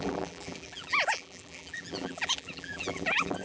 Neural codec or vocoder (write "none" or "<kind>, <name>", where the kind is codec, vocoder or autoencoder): vocoder, BigVGAN v2